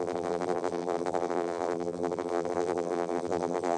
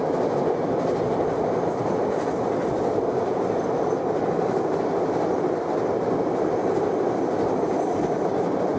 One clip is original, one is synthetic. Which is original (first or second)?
second